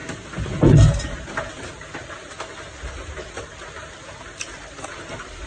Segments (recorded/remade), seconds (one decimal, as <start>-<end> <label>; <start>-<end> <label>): 0.0-5.5 recorded